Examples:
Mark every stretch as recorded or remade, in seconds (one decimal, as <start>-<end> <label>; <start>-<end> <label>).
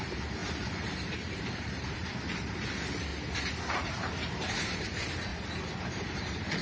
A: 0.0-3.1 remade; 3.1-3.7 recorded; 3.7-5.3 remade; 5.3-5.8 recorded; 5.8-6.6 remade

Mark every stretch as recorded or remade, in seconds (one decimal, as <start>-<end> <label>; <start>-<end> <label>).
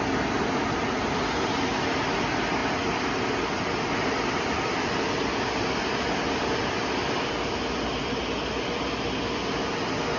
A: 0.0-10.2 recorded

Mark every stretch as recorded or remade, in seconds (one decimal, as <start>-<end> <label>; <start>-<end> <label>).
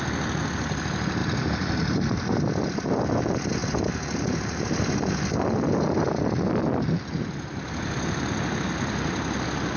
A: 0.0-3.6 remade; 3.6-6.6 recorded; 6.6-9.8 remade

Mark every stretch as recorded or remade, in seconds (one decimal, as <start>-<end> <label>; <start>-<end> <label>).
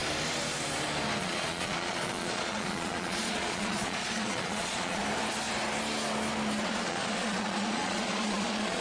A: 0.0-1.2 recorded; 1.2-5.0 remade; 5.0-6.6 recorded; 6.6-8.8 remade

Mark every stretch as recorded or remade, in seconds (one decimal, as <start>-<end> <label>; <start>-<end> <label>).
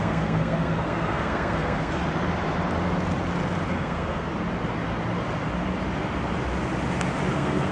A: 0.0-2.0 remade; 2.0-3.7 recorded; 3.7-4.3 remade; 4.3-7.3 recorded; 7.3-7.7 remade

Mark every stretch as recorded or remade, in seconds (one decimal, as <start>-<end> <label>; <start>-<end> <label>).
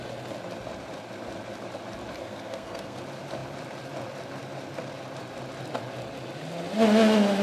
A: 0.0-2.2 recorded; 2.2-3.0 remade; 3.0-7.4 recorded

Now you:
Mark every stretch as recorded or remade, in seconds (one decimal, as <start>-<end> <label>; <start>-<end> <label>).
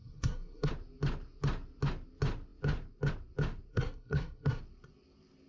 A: 0.0-0.7 remade; 0.7-3.7 recorded; 3.7-4.6 remade; 4.6-5.5 recorded